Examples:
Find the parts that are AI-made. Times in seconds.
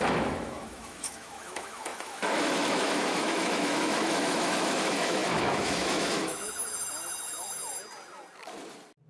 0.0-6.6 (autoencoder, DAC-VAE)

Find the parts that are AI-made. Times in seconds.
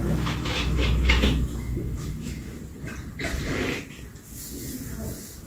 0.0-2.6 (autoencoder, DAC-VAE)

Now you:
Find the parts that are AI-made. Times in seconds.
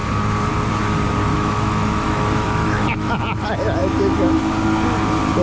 1.3-3.2 (autoencoder, DAC-VAE); 3.8-4.4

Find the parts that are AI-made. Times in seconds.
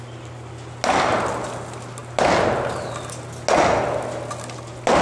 none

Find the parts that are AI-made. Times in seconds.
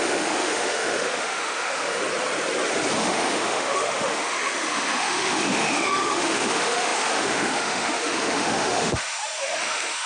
0.0-2.0 (autoencoder, DAC-VAE); 3.0-10.1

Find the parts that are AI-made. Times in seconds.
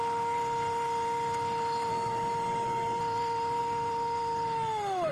0.0-1.9 (autoencoder, DAC-VAE); 3.0-5.1